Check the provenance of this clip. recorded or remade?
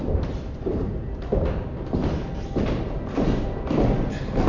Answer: recorded